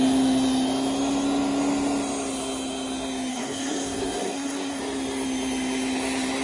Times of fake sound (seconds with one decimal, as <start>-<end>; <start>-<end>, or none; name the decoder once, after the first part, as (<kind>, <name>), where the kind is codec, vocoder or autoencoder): 3.3-4.8 (codec, SNAC)